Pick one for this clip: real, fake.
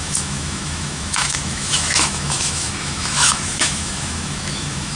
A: fake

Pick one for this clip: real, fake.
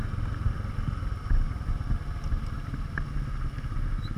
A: real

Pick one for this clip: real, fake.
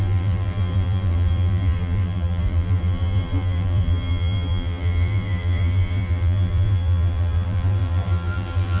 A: fake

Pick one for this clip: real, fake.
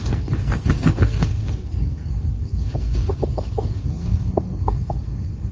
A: fake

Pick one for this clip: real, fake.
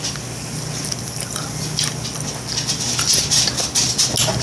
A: real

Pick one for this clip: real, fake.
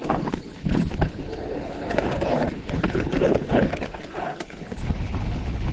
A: fake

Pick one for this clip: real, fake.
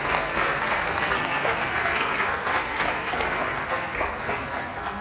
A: fake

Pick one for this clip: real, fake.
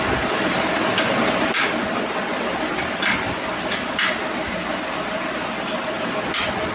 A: real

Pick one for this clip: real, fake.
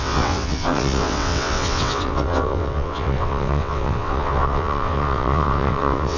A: fake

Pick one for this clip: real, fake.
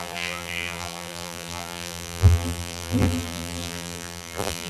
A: fake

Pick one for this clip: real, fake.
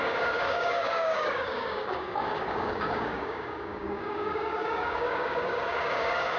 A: fake